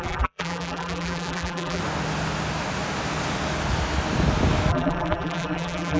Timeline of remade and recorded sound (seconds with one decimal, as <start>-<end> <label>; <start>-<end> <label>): 0.0-1.8 remade; 1.8-4.7 recorded; 4.7-6.0 remade